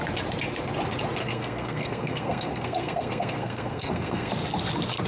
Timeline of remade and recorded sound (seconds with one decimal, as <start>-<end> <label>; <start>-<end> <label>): 0.0-1.2 recorded; 1.2-4.3 remade; 4.3-5.1 recorded